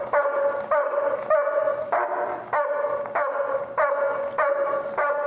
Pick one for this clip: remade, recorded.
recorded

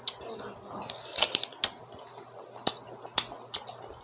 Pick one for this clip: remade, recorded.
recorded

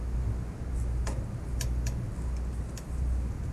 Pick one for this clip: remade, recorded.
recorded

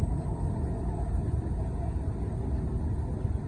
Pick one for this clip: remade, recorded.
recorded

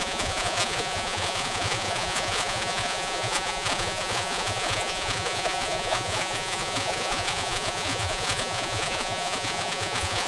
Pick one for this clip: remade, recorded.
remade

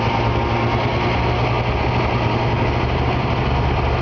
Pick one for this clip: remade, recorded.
recorded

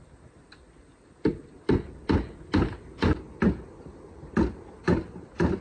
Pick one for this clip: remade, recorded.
recorded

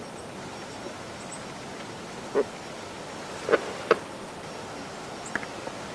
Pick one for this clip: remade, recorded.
recorded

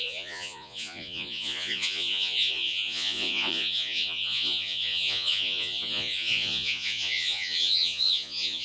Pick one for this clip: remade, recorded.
remade